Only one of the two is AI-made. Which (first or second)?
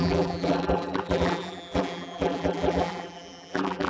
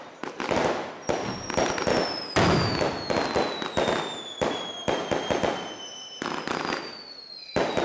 first